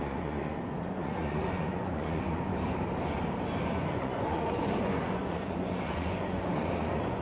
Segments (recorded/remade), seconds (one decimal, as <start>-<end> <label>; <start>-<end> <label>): 0.0-2.5 remade; 2.5-3.6 recorded; 3.6-7.2 remade